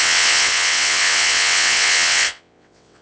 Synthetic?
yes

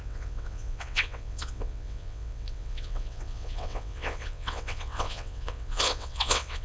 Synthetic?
yes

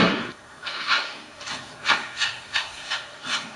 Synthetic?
yes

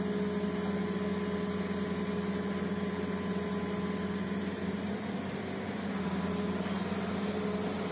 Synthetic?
no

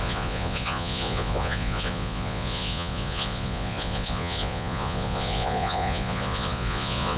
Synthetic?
yes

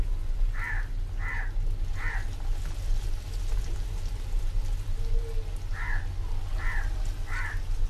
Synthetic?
no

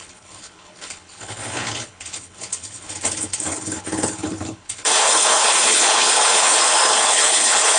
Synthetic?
yes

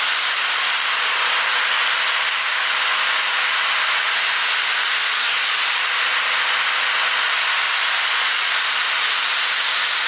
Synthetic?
no